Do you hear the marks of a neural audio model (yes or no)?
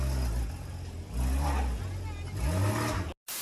no